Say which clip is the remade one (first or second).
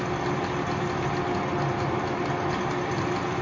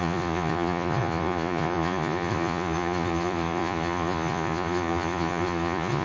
second